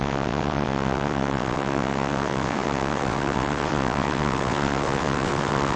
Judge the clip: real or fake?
fake